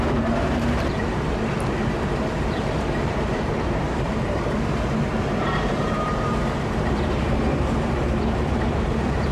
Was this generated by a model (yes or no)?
yes